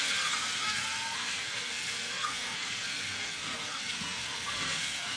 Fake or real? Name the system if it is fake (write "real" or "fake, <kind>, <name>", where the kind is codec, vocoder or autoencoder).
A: fake, codec, SNAC